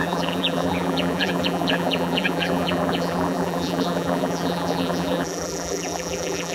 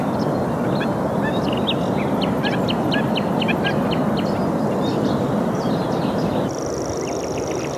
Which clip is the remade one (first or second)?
first